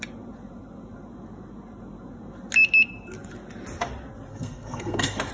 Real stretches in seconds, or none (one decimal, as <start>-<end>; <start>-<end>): 0.0-4.3